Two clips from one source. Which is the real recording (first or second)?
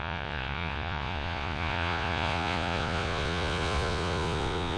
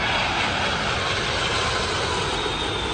second